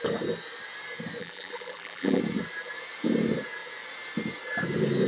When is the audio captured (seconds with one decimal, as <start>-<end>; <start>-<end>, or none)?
0.0-1.2; 2.2-5.1